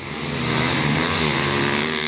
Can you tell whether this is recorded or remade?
recorded